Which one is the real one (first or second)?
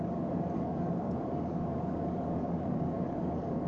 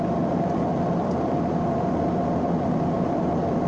second